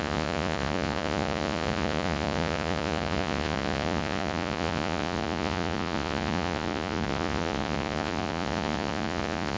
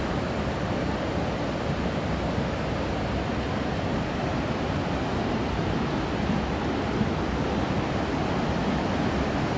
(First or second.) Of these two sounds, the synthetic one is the first